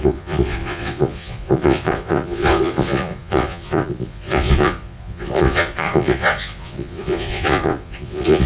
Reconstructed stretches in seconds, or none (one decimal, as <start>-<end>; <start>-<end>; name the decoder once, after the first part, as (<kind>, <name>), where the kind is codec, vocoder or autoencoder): 0.0-8.5 (vocoder, Vocos)